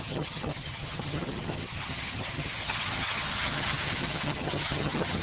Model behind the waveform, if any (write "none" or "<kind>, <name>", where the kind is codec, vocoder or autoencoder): vocoder, HiFi-GAN